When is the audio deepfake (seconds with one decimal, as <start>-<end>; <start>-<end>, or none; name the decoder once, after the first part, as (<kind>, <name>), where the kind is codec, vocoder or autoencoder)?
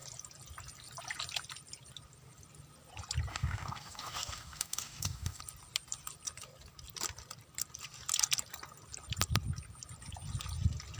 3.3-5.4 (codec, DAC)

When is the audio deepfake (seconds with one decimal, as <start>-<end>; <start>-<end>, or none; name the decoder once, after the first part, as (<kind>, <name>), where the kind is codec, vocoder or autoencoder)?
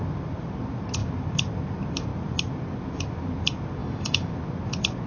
3.8-4.3 (autoencoder, DAC-VAE)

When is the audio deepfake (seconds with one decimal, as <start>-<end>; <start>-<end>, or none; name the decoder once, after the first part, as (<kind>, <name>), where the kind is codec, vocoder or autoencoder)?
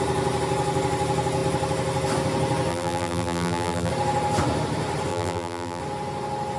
2.7-3.9 (vocoder, BigVGAN v2); 5.1-5.8